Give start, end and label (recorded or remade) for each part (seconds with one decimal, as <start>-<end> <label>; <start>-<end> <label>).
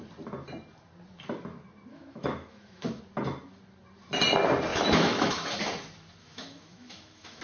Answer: 0.0-1.9 recorded; 1.9-3.0 remade; 3.0-4.7 recorded; 4.7-5.6 remade; 5.6-6.2 recorded; 6.2-7.4 remade